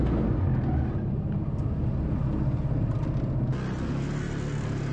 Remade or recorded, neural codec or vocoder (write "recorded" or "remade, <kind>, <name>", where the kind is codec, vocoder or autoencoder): recorded